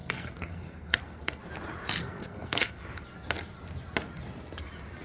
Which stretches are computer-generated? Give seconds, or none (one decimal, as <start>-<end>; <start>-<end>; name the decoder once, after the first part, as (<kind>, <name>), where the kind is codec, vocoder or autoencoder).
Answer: 0.0-1.4 (codec, SNAC); 2.0-2.8